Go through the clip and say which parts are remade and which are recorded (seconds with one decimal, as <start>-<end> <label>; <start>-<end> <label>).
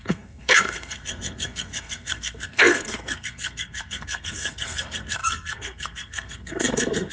0.0-7.1 remade